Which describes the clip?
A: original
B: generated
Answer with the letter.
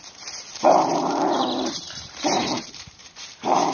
B